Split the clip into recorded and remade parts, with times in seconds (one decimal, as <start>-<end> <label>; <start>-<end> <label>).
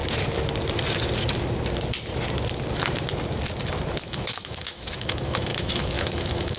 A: 0.0-4.0 recorded; 4.0-6.6 remade